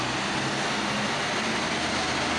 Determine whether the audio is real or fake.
real